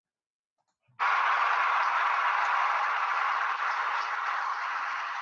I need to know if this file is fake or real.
real